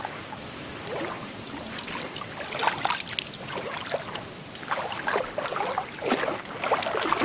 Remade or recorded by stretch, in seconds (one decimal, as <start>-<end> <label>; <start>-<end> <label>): 0.0-7.2 recorded